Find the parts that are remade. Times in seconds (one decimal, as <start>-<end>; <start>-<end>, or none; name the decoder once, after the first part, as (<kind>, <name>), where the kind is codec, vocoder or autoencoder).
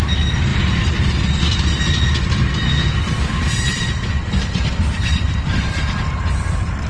2.8-6.9 (vocoder, BigVGAN v2)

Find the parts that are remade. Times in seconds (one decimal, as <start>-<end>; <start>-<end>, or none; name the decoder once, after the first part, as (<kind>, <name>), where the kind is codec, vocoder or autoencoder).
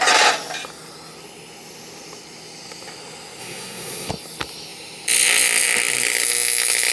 3.4-4.1 (codec, SNAC)